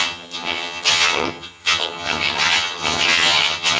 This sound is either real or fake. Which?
fake